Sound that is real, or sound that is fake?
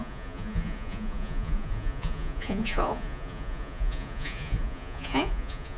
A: fake